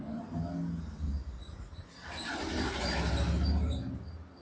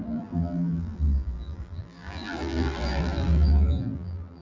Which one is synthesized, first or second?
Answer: second